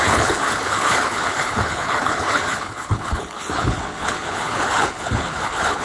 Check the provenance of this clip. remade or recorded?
remade